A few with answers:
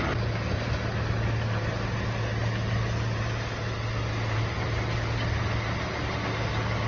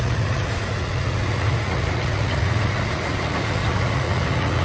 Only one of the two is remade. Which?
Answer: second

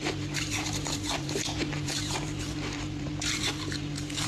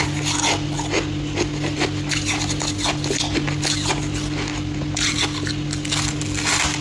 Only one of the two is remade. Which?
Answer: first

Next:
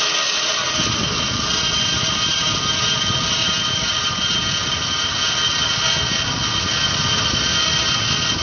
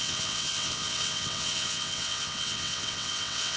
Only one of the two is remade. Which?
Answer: second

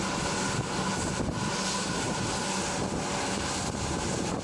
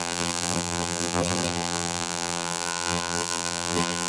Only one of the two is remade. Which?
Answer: second